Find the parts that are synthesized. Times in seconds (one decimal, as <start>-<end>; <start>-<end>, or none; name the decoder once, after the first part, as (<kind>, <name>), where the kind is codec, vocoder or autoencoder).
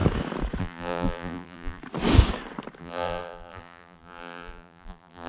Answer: 0.6-1.8 (vocoder, BigVGAN v2); 2.8-5.3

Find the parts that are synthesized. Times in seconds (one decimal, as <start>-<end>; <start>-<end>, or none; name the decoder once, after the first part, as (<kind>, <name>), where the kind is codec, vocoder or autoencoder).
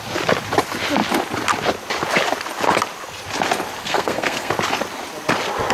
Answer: 3.8-4.5 (codec, SNAC)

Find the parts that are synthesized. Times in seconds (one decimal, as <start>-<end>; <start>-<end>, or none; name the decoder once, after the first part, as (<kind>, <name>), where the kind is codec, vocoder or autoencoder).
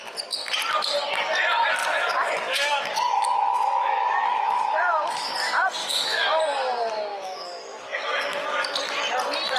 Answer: 1.8-5.3 (autoencoder, DAC-VAE); 5.8-6.4; 7.1-8.7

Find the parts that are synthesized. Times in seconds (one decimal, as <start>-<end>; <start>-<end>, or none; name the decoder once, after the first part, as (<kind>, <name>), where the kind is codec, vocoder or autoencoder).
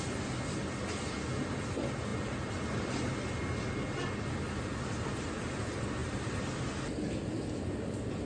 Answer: none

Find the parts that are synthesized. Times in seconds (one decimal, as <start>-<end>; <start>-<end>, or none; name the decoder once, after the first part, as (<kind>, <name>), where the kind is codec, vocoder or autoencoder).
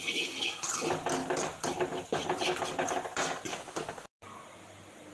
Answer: 3.5-4.1 (autoencoder, DAC-VAE)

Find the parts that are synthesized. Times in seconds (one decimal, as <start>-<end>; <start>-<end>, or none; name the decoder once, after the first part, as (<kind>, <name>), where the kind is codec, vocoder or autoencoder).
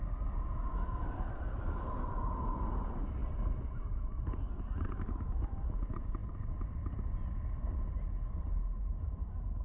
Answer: none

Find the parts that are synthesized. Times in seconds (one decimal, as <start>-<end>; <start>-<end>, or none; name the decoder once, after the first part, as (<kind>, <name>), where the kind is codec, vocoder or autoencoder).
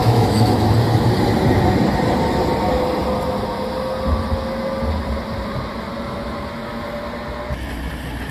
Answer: 0.0-0.7 (autoencoder, DAC-VAE)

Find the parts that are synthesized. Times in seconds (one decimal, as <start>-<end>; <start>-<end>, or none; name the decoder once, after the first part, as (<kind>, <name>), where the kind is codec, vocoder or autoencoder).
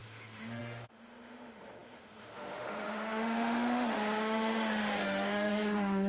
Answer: 0.0-6.1 (autoencoder, DAC-VAE)